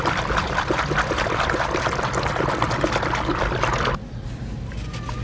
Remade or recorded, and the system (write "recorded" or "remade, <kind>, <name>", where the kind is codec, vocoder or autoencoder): recorded